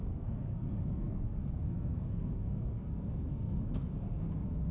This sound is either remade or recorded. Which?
remade